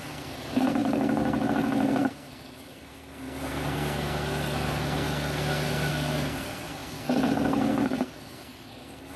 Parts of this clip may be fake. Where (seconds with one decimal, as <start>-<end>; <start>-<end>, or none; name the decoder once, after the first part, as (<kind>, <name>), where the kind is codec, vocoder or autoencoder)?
0.0-9.2 (codec, SNAC)